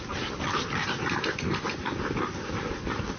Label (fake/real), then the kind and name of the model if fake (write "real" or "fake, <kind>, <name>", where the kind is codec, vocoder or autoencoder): real